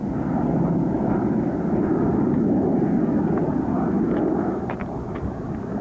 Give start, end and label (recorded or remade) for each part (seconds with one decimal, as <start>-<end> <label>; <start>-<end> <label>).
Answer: 0.0-5.8 recorded